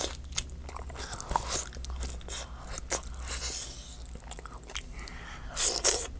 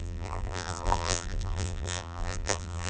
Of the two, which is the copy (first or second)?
second